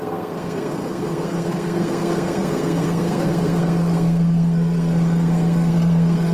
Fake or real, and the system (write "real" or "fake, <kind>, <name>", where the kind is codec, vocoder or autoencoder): fake, codec, SNAC